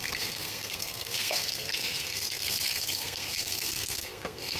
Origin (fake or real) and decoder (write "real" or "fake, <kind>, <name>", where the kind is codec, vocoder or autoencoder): fake, codec, SNAC